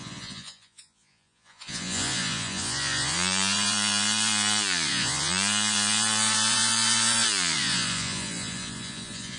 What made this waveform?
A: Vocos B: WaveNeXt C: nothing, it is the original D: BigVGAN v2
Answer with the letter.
A